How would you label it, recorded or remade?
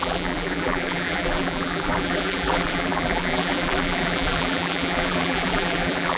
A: remade